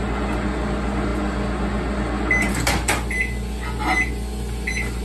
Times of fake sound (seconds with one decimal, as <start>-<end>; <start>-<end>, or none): none